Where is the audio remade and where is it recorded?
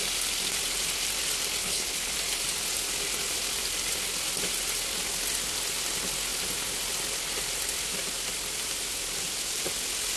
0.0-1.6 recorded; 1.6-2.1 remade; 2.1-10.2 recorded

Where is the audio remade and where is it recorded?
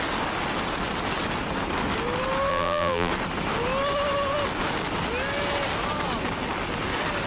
0.0-2.5 recorded; 2.5-3.1 remade; 3.1-7.3 recorded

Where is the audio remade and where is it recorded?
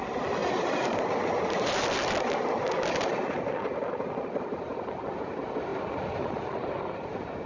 0.0-7.5 recorded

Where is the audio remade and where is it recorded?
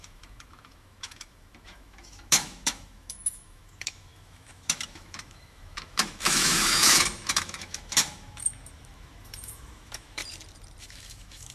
0.0-10.2 remade; 10.2-10.8 recorded; 10.8-11.5 remade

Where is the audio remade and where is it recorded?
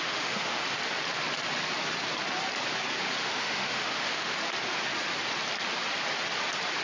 0.0-0.6 remade; 0.6-3.2 recorded; 3.2-4.4 remade; 4.4-6.8 recorded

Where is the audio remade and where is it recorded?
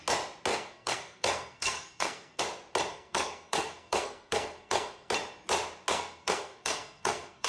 0.0-0.5 recorded; 0.5-2.4 remade; 2.4-2.9 recorded; 2.9-5.1 remade; 5.1-5.9 recorded; 5.9-7.5 remade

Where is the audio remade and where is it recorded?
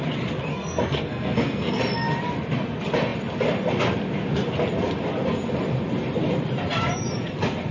0.0-0.5 recorded; 0.5-1.8 remade; 1.8-7.7 recorded